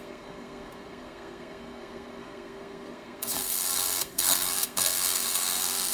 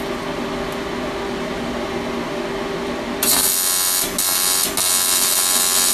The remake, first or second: first